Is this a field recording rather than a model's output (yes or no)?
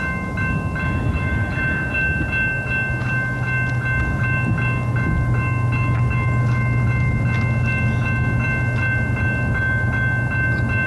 yes